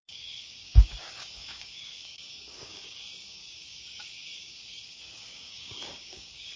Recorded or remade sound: remade